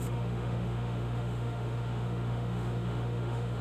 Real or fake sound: fake